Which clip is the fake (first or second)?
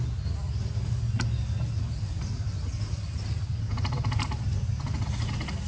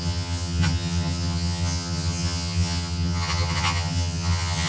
second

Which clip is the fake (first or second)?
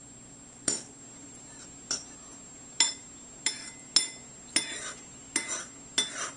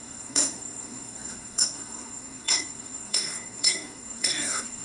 second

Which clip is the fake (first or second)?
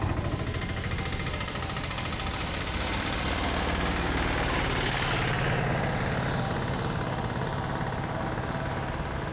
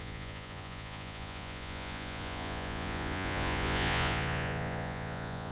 second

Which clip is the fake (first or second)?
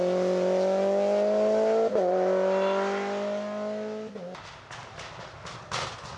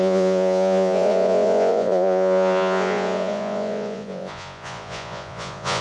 second